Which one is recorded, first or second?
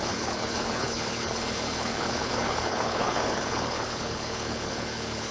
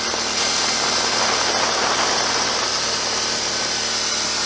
second